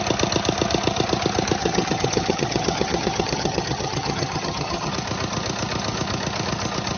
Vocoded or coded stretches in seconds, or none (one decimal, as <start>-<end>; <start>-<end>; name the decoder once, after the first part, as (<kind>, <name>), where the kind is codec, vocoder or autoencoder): 1.6-4.9 (vocoder, HiFi-GAN)